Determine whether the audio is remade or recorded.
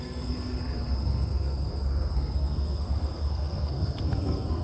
remade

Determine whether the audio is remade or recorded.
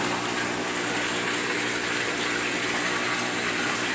recorded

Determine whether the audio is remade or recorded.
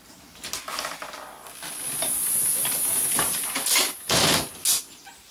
recorded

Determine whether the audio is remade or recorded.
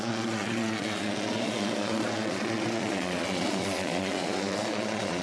remade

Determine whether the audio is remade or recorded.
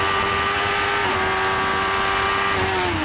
recorded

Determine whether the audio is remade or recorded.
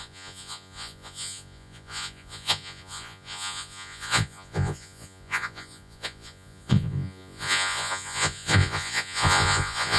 remade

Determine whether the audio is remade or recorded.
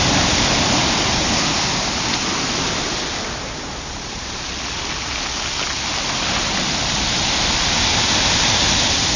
recorded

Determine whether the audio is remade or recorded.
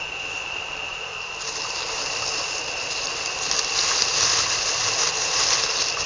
recorded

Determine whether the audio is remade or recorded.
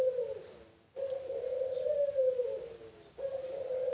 recorded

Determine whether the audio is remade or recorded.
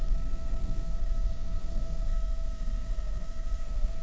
remade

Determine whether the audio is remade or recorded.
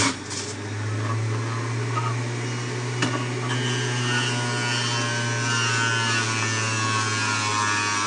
recorded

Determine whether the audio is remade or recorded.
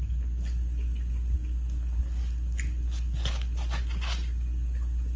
recorded